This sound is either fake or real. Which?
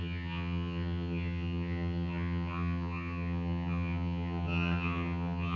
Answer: fake